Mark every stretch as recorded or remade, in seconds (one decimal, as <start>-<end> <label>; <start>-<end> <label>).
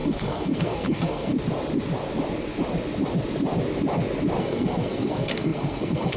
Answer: 0.0-1.3 remade; 1.3-4.4 recorded; 4.4-6.2 remade